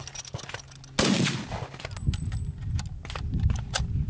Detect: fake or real real